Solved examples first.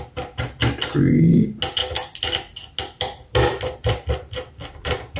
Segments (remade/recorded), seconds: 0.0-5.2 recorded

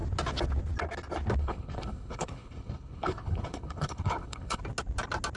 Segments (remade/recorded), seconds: 0.0-1.4 recorded; 1.4-4.6 remade; 4.6-5.4 recorded

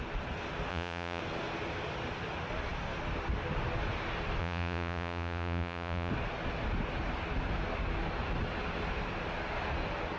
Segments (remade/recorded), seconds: 0.0-0.7 recorded; 0.7-1.2 remade; 1.2-4.4 recorded; 4.4-6.1 remade; 6.1-10.2 recorded

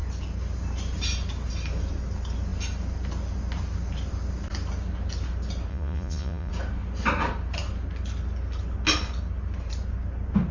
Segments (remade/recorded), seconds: 0.0-5.7 recorded; 5.7-6.5 remade; 6.5-10.5 recorded